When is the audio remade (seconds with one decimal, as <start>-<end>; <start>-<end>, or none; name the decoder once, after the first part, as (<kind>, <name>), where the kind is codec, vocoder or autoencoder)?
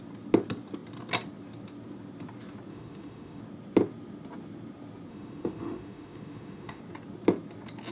2.7-3.4 (autoencoder, DAC-VAE); 5.1-6.8